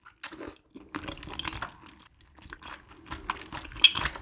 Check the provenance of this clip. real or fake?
real